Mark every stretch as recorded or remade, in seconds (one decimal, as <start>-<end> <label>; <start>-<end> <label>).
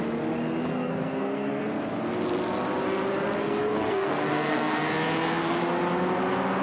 0.0-0.7 recorded; 0.7-1.6 remade; 1.6-3.4 recorded; 3.4-4.8 remade; 4.8-6.6 recorded